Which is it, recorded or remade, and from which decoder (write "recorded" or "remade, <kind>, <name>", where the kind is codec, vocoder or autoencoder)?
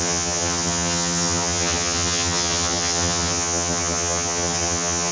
remade, vocoder, HiFi-GAN